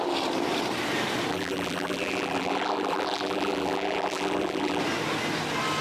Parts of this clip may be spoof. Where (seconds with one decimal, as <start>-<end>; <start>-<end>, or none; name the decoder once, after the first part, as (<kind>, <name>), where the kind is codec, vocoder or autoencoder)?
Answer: 1.3-4.8 (vocoder, BigVGAN v2)